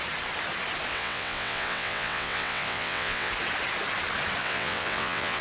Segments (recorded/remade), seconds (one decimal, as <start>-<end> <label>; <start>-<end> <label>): 0.0-0.9 recorded; 0.9-3.3 remade; 3.3-4.4 recorded; 4.4-5.4 remade